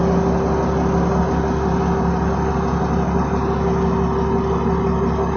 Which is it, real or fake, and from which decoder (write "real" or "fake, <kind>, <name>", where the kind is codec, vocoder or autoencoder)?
real